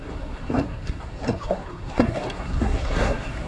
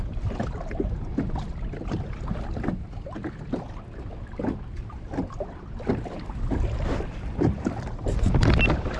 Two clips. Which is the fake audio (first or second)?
first